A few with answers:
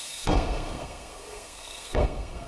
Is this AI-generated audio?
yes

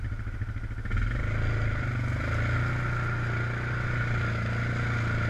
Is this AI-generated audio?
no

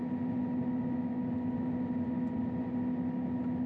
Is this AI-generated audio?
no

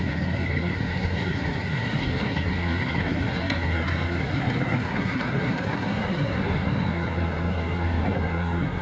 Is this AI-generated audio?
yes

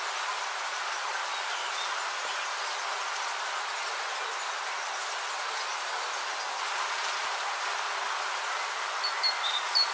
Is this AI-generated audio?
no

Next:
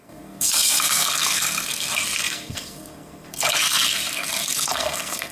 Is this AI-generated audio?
yes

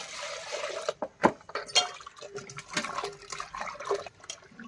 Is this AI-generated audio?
no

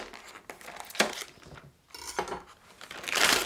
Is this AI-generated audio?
no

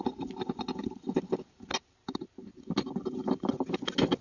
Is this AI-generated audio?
no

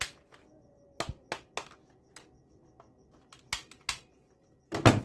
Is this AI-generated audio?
no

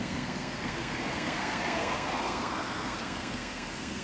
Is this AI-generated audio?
yes